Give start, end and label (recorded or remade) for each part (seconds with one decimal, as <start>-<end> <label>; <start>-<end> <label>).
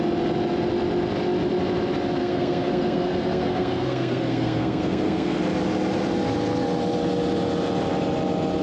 0.0-2.2 recorded; 2.2-5.4 remade; 5.4-8.6 recorded